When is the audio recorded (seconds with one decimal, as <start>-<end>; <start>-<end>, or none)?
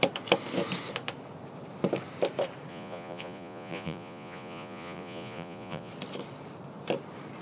0.0-2.7; 5.9-7.4